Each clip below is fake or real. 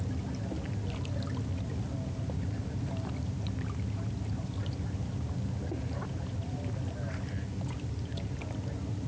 real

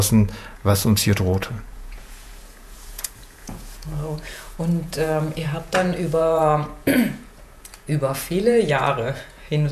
fake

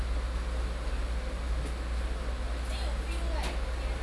real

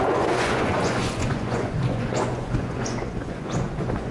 fake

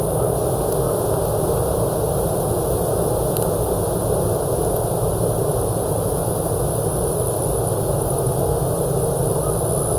real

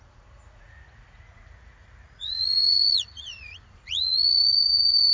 fake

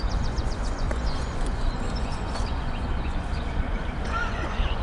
fake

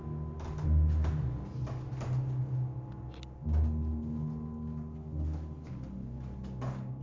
real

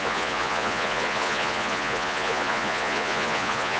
fake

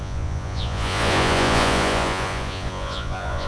fake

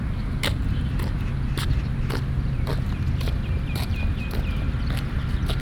real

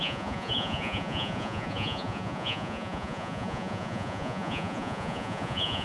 fake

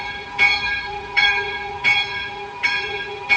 fake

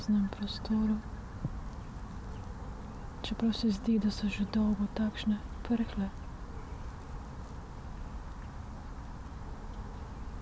real